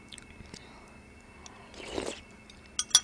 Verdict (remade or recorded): recorded